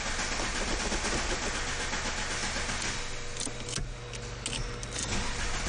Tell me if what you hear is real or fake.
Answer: real